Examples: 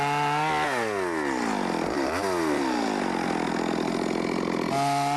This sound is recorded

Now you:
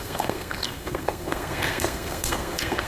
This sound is remade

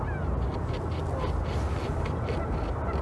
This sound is recorded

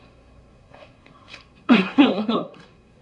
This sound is remade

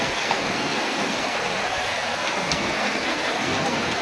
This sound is remade